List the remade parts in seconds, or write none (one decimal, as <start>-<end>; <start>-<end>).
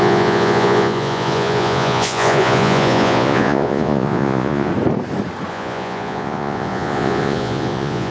0.0-4.7; 5.5-8.1